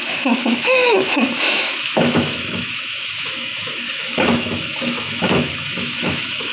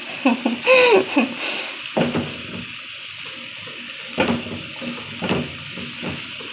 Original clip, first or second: second